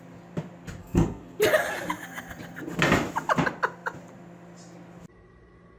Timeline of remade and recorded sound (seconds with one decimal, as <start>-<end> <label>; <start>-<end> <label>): 0.0-0.8 recorded; 0.8-1.4 remade; 1.4-5.8 recorded